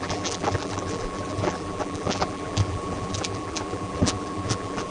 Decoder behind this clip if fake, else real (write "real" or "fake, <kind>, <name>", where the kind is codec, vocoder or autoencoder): fake, vocoder, BigVGAN v2